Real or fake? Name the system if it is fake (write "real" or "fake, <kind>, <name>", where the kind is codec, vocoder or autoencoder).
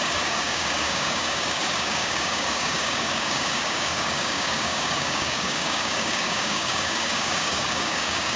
fake, codec, DAC